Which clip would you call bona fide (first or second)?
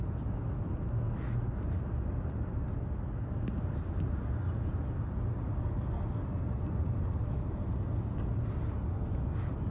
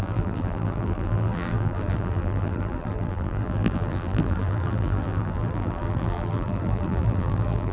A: first